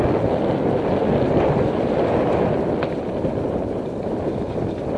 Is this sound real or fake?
real